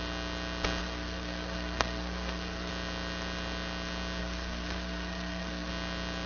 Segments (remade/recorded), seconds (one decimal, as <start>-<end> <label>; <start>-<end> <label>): 0.0-0.8 recorded; 0.8-2.7 remade; 2.7-4.2 recorded; 4.2-5.7 remade; 5.7-6.3 recorded